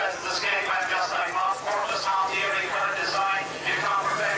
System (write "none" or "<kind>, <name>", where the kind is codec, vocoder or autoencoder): vocoder, Vocos